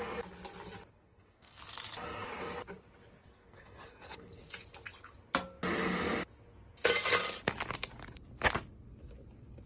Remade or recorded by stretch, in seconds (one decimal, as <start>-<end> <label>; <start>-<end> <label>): 0.0-0.9 recorded; 0.9-1.6 remade; 1.6-3.2 recorded; 3.2-4.4 remade; 4.4-9.7 recorded